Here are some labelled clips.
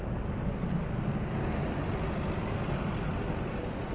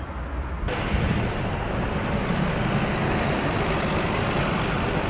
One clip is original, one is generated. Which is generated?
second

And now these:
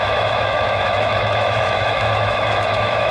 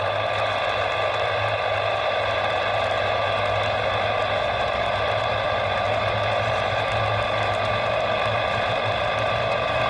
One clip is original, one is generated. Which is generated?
first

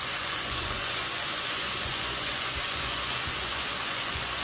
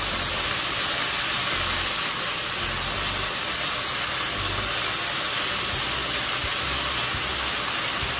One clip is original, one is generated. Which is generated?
first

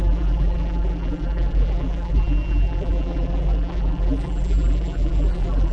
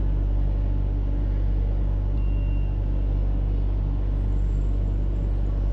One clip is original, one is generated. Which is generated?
first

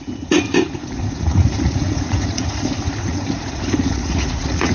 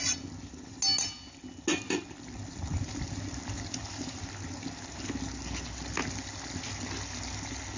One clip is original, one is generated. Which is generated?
first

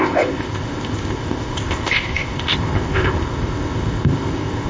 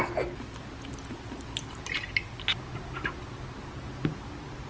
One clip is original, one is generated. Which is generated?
first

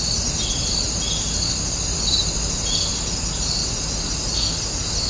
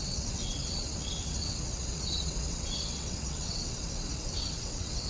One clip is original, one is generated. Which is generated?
second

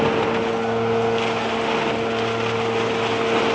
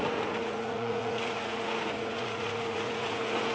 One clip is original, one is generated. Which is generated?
second